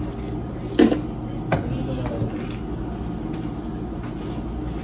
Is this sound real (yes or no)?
yes